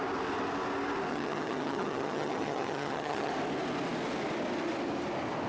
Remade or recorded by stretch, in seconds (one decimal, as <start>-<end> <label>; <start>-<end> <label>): 0.0-1.1 recorded; 1.1-3.3 remade; 3.3-5.5 recorded

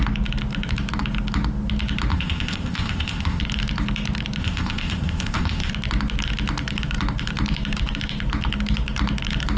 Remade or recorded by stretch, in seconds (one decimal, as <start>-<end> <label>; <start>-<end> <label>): 0.0-2.1 recorded; 2.1-3.4 remade; 3.4-4.4 recorded; 4.4-5.7 remade; 5.7-9.6 recorded

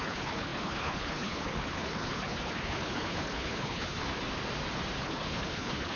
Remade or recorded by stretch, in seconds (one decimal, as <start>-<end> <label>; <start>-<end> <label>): 0.0-4.1 remade; 4.1-5.0 recorded; 5.0-6.0 remade

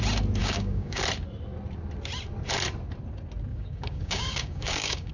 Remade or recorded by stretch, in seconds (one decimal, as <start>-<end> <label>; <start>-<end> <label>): 0.0-0.4 recorded; 0.4-1.0 remade; 1.0-3.5 recorded; 3.5-5.1 remade

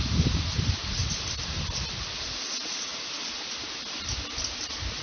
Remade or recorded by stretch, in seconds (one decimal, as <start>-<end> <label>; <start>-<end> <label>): 0.0-5.0 recorded

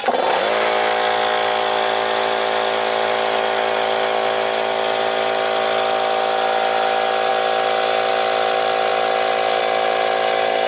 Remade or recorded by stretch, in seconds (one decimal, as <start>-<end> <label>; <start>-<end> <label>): 0.0-10.7 recorded

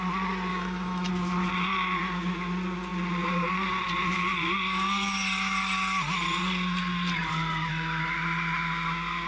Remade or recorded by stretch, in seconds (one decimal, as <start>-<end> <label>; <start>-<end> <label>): 0.0-0.5 recorded; 0.5-1.1 remade; 1.1-9.3 recorded